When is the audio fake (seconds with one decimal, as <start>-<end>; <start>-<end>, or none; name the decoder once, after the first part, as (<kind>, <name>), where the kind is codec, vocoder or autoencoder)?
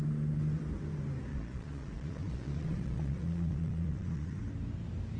1.3-4.4 (vocoder, Vocos)